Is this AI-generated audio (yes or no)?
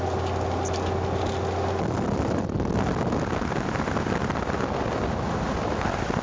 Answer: no